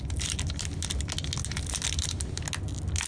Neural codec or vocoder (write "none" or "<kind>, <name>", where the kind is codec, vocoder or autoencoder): none